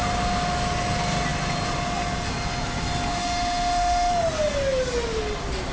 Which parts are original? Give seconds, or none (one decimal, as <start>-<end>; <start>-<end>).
0.0-3.1; 4.1-5.7